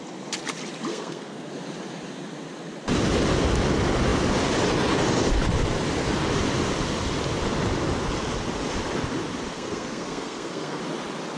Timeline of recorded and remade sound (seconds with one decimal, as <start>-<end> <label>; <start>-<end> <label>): 0.0-0.9 recorded; 0.9-1.5 remade; 1.5-9.5 recorded; 9.5-10.8 remade; 10.8-11.4 recorded